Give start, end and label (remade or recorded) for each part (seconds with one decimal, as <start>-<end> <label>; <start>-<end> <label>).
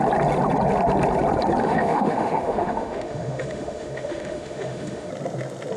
0.0-1.6 recorded; 1.6-5.1 remade; 5.1-5.8 recorded